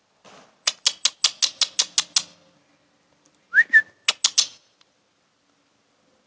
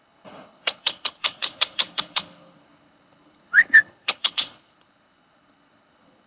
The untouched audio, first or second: first